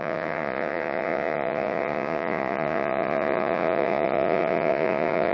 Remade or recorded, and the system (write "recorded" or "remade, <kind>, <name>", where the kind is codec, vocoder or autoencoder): remade, vocoder, Vocos